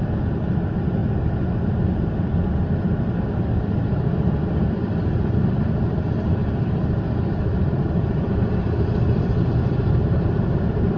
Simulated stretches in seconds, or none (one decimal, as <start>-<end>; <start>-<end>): 0.0-1.0; 1.7-11.0